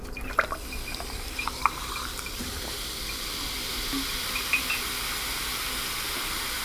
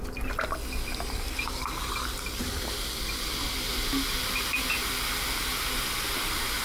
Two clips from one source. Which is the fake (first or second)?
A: first